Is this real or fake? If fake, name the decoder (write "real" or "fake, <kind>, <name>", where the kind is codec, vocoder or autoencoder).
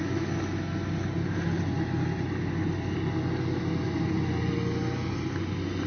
real